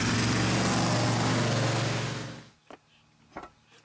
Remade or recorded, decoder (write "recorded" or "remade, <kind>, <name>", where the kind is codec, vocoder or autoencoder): recorded